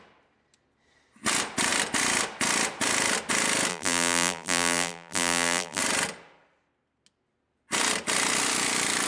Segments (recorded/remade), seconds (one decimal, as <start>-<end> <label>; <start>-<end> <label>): 0.0-3.7 recorded; 3.7-5.8 remade; 5.8-9.1 recorded